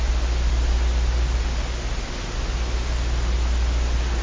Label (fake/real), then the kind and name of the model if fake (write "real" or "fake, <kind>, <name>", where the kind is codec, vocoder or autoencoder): real